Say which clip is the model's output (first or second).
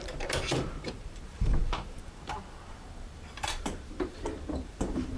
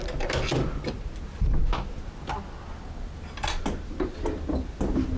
first